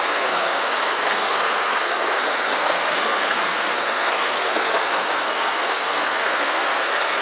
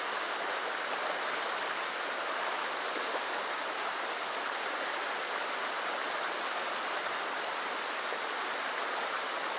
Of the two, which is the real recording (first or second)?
second